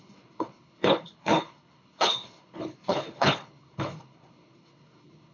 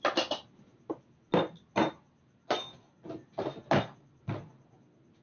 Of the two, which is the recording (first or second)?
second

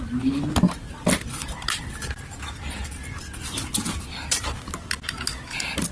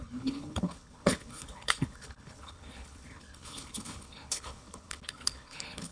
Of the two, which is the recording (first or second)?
first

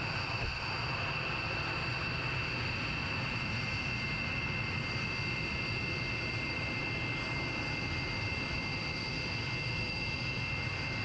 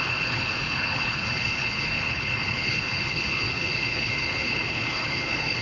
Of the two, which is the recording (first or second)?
first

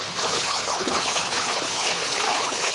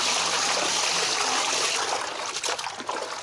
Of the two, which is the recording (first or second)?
second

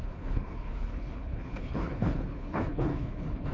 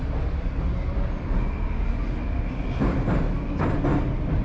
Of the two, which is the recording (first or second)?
second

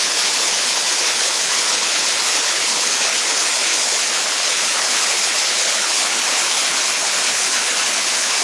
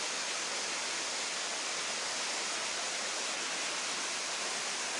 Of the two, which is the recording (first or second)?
second